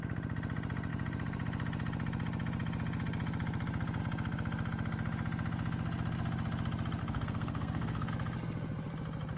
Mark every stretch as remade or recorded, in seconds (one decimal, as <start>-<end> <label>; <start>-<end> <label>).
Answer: 0.0-7.0 recorded; 7.0-8.1 remade; 8.1-9.4 recorded